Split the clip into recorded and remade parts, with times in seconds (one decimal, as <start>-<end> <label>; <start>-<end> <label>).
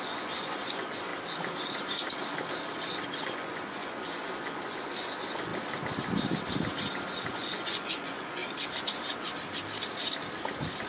0.0-1.1 remade; 1.1-3.2 recorded; 3.2-5.5 remade; 5.5-7.3 recorded; 7.3-8.4 remade; 8.4-10.9 recorded